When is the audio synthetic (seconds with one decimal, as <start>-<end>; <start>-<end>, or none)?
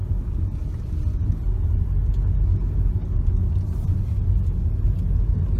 none